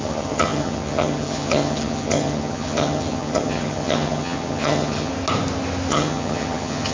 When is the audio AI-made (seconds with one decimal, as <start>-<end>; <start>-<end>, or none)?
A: 0.0-5.1; 5.9-6.9